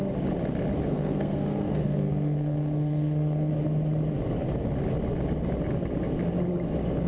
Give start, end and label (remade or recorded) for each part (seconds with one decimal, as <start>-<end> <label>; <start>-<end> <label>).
0.0-0.9 recorded; 0.9-3.5 remade; 3.5-7.1 recorded